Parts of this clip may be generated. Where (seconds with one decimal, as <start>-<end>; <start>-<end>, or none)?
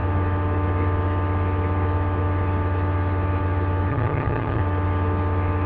3.9-4.6